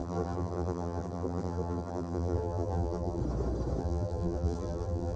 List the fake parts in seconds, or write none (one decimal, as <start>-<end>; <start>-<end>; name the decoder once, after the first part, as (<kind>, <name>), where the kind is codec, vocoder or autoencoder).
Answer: 0.0-3.2 (vocoder, BigVGAN v2); 3.8-5.2